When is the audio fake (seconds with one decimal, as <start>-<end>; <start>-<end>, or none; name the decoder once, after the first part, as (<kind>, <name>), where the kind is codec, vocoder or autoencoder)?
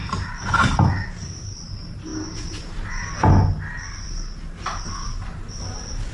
none